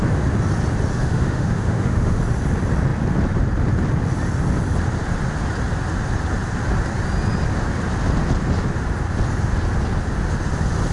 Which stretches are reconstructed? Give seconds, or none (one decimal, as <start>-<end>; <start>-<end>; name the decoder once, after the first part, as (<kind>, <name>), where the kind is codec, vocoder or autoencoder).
0.9-2.2 (autoencoder, DAC-VAE)